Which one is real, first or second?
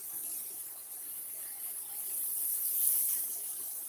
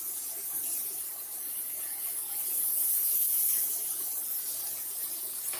first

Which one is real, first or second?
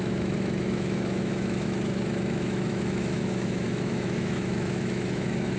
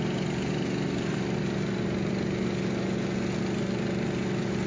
second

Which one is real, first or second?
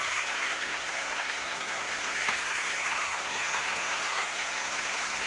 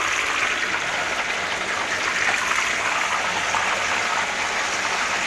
second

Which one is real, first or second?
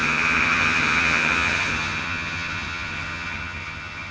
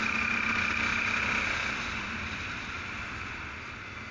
second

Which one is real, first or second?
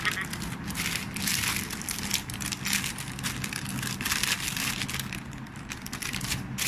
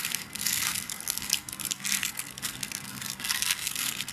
first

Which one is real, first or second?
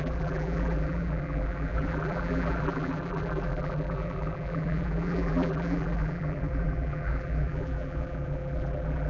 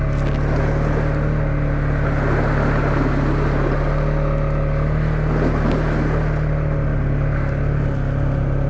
second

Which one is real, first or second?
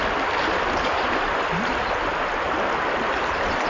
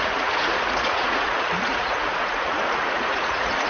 first